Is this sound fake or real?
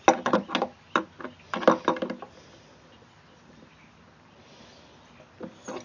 real